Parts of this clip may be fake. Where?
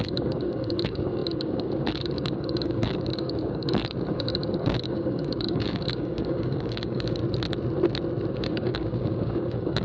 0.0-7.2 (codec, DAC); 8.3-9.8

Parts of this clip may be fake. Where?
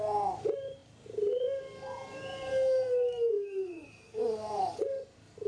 2.5-4.8 (codec, DAC)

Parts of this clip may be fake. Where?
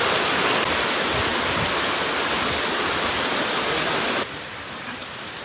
none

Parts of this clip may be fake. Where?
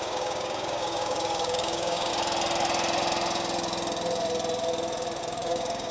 0.0-2.1 (codec, DAC); 5.2-5.9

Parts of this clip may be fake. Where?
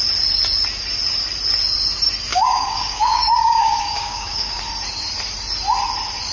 2.3-4.6 (codec, DAC)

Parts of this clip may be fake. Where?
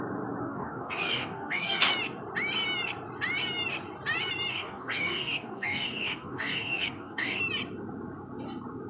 0.4-1.9 (codec, DAC); 4.5-7.4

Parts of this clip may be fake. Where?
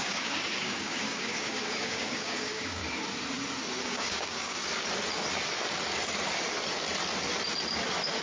0.0-2.8 (codec, DAC); 3.8-4.6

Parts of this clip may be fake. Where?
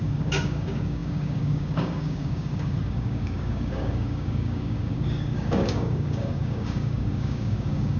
0.0-8.0 (codec, DAC)